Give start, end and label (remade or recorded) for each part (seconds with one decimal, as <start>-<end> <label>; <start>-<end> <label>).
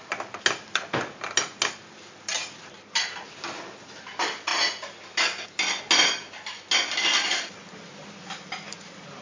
0.0-9.2 recorded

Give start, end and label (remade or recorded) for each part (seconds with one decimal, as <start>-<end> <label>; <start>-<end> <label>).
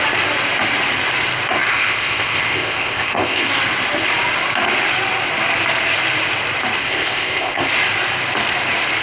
0.0-1.7 recorded; 1.7-3.5 remade; 3.5-6.8 recorded; 6.8-7.7 remade; 7.7-9.0 recorded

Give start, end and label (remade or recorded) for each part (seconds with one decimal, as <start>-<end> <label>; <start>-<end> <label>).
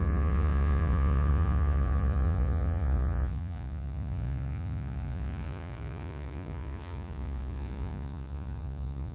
0.0-9.1 remade